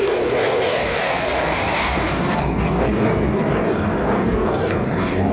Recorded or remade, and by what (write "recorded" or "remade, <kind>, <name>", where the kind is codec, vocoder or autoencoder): remade, codec, DAC